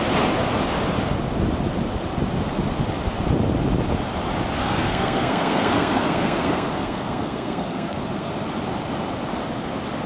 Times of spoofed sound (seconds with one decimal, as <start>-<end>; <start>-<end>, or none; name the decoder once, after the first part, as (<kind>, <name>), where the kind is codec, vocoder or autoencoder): 4.6-8.3 (codec, SNAC)